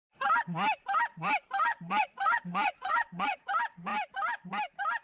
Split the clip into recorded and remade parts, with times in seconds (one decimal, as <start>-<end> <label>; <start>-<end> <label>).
0.0-1.7 recorded; 1.7-3.5 remade; 3.5-5.0 recorded